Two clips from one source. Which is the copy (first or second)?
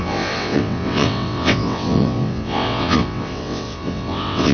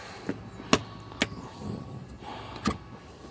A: first